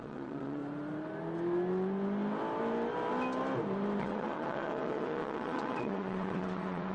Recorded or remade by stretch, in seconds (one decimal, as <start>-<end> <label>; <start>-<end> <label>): 0.0-0.6 remade; 0.6-4.0 recorded; 4.0-6.9 remade